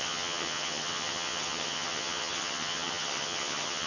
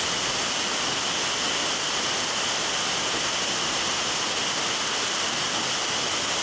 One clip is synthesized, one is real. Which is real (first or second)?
second